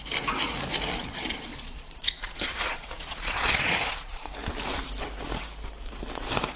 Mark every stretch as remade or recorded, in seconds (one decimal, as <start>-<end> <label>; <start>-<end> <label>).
0.0-0.9 recorded; 0.9-4.3 remade; 4.3-6.6 recorded